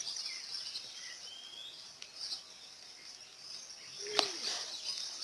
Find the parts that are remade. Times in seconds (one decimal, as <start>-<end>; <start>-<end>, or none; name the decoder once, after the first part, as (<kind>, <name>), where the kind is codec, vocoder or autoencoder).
none